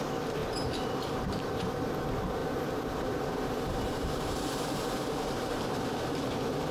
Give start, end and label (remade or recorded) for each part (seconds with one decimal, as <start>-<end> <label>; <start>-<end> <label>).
0.0-0.4 recorded; 0.4-1.6 remade; 1.6-2.4 recorded; 2.4-6.7 remade